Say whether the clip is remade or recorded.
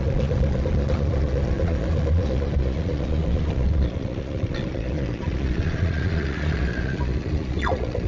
remade